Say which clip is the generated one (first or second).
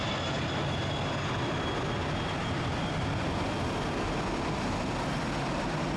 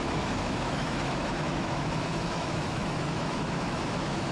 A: second